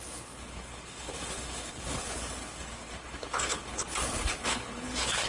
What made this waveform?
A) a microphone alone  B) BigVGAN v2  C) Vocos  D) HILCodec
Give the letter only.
D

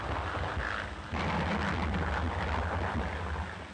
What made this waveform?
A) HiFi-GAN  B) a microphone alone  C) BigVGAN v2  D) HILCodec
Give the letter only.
B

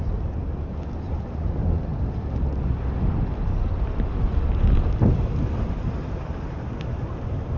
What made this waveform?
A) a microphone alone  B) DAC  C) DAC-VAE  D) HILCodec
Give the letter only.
A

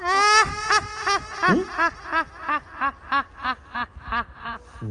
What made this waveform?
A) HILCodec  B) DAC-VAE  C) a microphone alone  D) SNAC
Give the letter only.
C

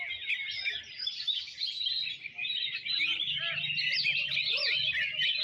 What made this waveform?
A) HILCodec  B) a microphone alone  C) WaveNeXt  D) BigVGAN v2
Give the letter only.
B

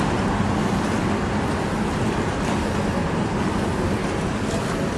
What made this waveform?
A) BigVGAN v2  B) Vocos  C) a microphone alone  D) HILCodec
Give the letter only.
C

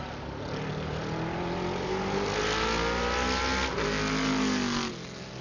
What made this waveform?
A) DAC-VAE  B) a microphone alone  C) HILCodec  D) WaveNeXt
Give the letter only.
B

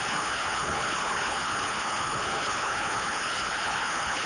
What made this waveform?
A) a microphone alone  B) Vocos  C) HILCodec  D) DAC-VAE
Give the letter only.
C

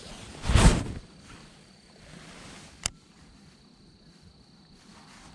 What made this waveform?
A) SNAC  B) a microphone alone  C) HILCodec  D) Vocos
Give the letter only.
B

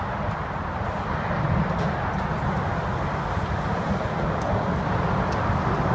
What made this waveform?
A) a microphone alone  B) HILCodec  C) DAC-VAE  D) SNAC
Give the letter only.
A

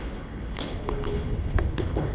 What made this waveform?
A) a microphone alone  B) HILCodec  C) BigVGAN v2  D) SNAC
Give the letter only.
B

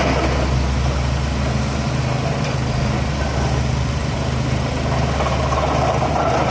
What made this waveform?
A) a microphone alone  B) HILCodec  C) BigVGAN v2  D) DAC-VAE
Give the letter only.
A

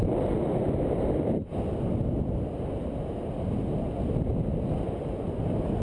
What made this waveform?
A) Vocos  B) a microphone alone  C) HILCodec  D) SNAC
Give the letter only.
B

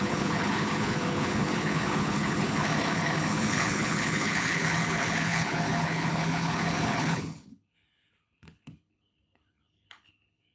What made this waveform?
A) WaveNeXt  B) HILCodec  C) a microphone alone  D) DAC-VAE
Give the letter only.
B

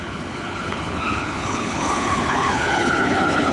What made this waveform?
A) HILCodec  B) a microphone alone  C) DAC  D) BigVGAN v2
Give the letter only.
A